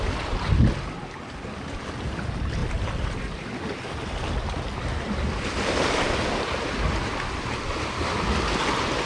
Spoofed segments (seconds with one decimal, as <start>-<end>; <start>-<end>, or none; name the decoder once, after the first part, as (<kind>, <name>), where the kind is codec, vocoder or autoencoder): none